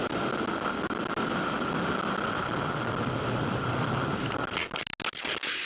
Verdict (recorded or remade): recorded